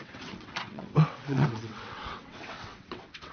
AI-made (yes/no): yes